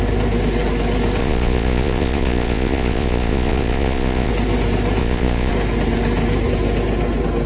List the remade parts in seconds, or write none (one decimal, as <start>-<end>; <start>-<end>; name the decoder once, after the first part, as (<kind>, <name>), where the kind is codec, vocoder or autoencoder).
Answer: 1.2-4.3 (vocoder, Vocos); 5.0-5.5